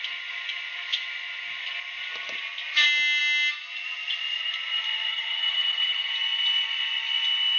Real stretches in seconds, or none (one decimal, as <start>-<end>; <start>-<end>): 0.0-5.1; 6.1-7.6